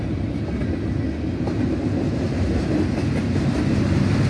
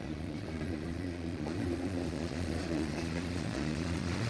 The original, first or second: first